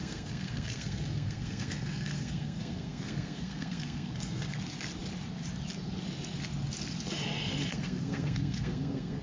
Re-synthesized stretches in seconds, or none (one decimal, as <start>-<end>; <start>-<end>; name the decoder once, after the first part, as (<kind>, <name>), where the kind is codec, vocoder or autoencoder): 0.0-4.6 (codec, SNAC); 7.7-9.2